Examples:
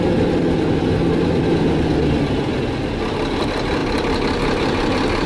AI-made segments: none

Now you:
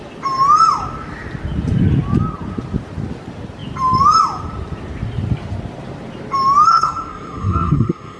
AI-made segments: 6.7-8.2 (codec, SNAC)

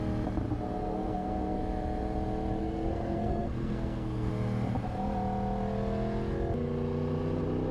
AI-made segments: 0.8-1.6 (codec, SNAC); 2.6-4.3

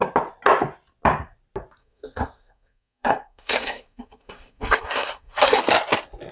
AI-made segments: 1.8-5.6 (codec, SNAC)

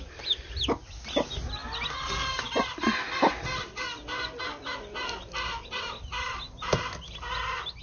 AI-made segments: none

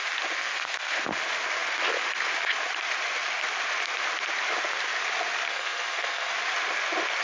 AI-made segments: 0.4-1.0 (codec, SNAC); 5.5-6.3

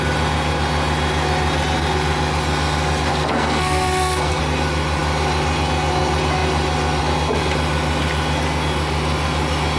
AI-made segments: 3.1-4.4 (codec, SNAC)

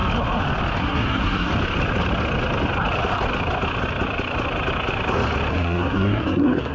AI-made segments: 0.8-1.5 (codec, SNAC); 5.5-6.7